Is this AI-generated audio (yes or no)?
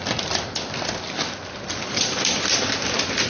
yes